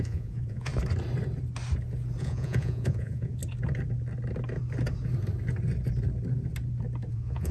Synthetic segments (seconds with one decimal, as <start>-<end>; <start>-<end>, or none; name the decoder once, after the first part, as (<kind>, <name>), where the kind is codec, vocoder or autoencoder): 0.0-0.7 (vocoder, Vocos); 2.2-3.4; 7.1-7.5